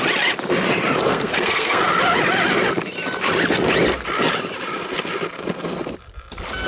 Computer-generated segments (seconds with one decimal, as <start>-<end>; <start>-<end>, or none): 1.1-1.8